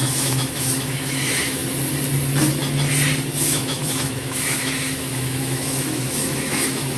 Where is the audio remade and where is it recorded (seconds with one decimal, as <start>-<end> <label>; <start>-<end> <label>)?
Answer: 0.0-1.6 remade; 1.6-3.4 recorded; 3.4-7.0 remade